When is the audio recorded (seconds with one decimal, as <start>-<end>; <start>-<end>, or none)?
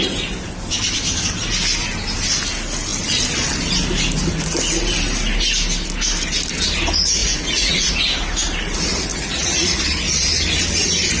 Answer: 0.0-7.2; 7.9-9.1; 9.8-11.2